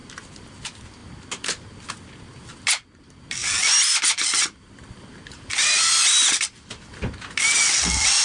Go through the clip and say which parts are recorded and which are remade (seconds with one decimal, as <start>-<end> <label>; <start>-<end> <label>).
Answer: 0.0-8.2 recorded